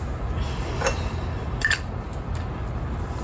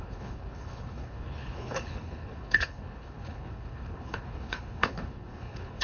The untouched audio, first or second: first